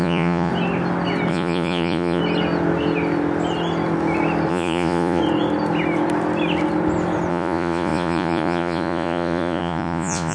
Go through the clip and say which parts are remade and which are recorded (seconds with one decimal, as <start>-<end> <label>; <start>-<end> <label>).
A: 0.0-0.5 remade; 0.5-1.3 recorded; 1.3-2.2 remade; 2.2-4.5 recorded; 4.5-5.2 remade; 5.2-7.3 recorded; 7.3-10.3 remade